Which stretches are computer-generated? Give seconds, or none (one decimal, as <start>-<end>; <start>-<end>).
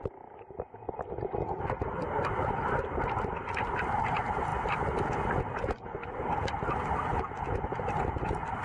none